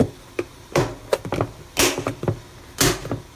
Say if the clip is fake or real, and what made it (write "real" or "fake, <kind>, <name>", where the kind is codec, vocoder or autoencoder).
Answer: real